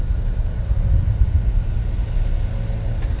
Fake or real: real